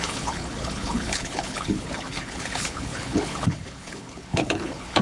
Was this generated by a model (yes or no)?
yes